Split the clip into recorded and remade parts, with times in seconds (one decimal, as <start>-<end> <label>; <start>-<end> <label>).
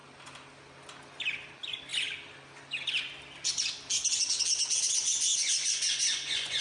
0.0-5.3 recorded; 5.3-6.6 remade